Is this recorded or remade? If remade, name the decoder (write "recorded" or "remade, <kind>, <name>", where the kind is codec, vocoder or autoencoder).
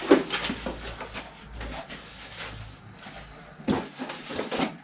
recorded